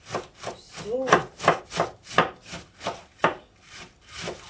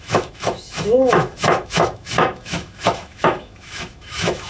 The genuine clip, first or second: first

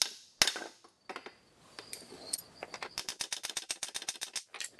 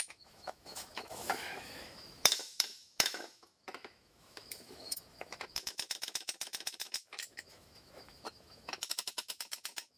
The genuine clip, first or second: first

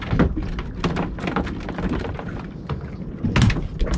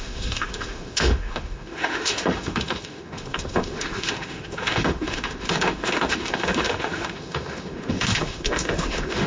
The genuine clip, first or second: first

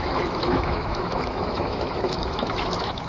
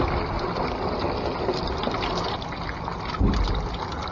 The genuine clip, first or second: second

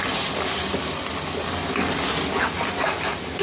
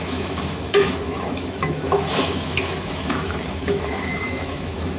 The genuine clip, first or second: first